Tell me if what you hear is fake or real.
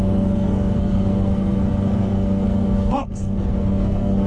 fake